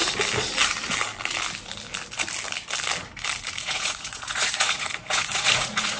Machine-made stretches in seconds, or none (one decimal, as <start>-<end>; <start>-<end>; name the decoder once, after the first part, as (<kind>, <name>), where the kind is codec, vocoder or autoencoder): 3.6-6.0 (vocoder, Vocos)